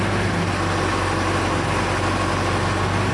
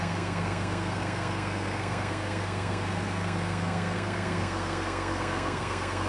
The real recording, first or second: first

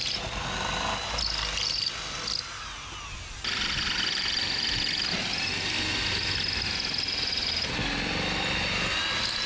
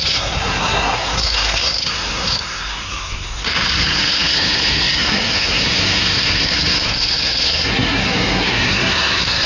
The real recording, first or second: first